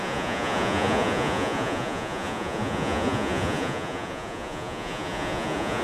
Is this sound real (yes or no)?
no